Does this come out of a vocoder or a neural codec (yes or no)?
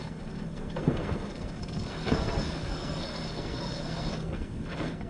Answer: yes